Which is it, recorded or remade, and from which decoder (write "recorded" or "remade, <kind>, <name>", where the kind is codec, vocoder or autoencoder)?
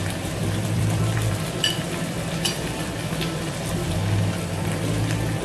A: remade, vocoder, BigVGAN v2